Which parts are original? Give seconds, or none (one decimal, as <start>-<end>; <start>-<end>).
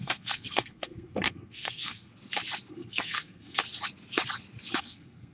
2.1-2.7; 3.6-4.8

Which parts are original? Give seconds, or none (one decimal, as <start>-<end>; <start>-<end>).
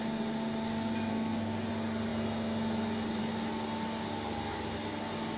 0.0-1.1; 1.7-5.4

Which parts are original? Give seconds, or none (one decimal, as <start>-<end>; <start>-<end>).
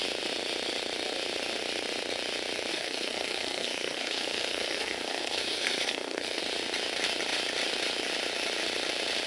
0.0-2.7; 6.4-9.3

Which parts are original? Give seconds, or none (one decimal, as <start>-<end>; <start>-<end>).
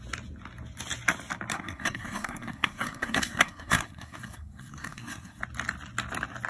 0.0-1.5; 5.4-6.5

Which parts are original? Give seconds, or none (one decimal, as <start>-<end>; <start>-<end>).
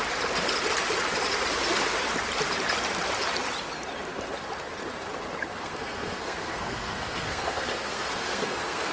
0.0-5.5